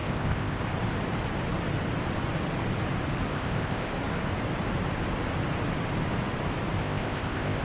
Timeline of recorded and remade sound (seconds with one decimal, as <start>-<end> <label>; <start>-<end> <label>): 0.0-0.6 remade; 0.6-3.3 recorded; 3.3-3.9 remade; 3.9-6.8 recorded; 6.8-7.6 remade